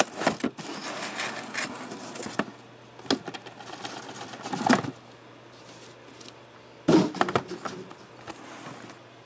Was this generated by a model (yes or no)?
no